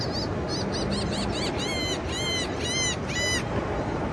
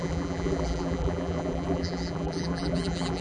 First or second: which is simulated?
second